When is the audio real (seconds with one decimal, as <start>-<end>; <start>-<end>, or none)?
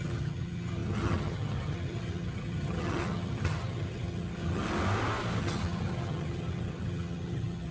4.6-5.4